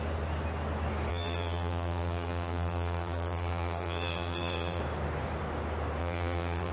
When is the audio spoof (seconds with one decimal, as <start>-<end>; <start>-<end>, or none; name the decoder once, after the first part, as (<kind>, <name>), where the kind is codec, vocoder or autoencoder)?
1.1-4.8 (vocoder, BigVGAN v2); 6.0-6.7